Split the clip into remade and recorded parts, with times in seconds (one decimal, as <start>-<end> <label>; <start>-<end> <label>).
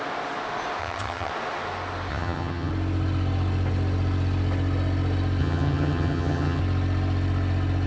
0.0-0.8 recorded; 0.8-1.3 remade; 1.3-2.1 recorded; 2.1-2.7 remade; 2.7-5.4 recorded; 5.4-6.6 remade; 6.6-7.9 recorded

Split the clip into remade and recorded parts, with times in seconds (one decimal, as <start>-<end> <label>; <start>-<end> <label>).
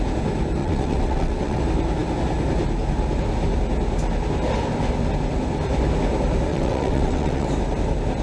0.0-0.6 recorded; 0.6-1.6 remade; 1.6-6.5 recorded; 6.5-7.5 remade; 7.5-8.2 recorded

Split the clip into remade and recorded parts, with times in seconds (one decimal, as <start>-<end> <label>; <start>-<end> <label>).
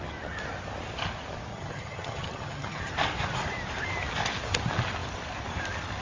0.0-1.5 recorded; 1.5-2.9 remade; 2.9-6.0 recorded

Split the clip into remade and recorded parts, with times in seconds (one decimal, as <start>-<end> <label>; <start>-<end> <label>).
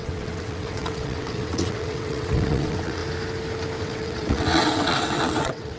0.0-3.0 remade; 3.0-3.8 recorded; 3.8-5.8 remade